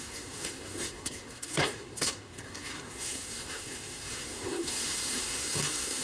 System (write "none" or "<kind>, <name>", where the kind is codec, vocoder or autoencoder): codec, SNAC